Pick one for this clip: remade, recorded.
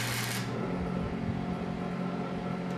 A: recorded